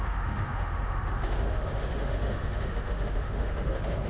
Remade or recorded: remade